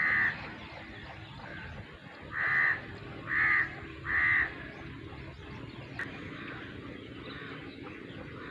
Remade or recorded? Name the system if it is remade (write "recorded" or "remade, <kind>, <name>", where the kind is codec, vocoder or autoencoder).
recorded